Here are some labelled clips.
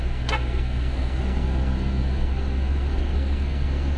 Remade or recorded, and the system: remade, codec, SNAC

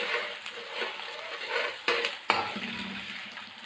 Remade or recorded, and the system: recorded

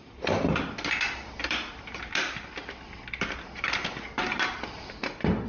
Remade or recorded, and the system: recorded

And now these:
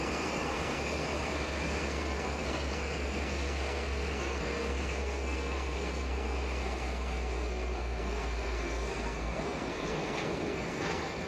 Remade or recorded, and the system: remade, codec, SNAC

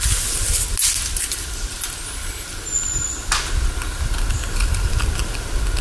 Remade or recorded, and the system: recorded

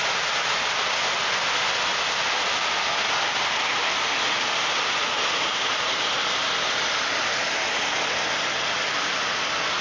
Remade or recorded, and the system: recorded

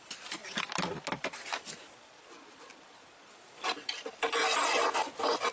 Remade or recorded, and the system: recorded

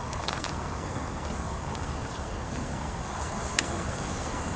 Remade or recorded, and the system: remade, codec, SNAC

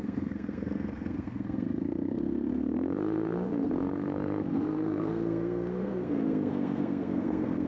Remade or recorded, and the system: remade, codec, SNAC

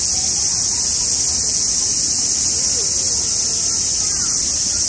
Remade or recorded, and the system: recorded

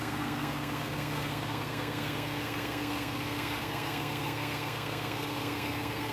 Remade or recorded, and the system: remade, codec, SNAC